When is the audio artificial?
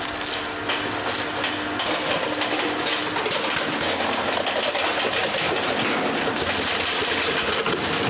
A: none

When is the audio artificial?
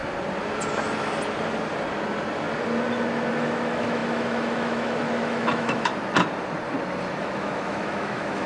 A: 3.3-5.9; 7.2-8.5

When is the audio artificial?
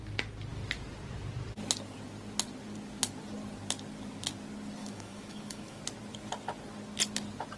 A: 4.8-5.8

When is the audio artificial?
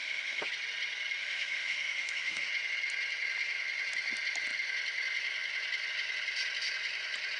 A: 0.0-0.5; 1.2-2.5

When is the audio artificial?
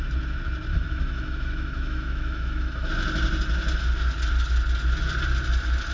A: 0.7-2.9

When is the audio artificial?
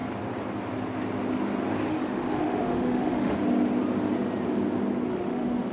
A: 1.9-3.3; 5.1-5.7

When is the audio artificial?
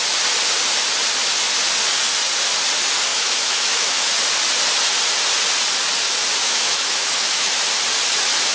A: 3.1-4.1; 6.4-7.5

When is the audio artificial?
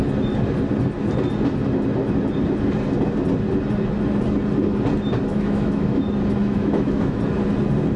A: 5.3-6.0; 6.4-7.2